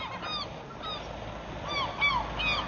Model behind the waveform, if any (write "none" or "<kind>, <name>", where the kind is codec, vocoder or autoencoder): none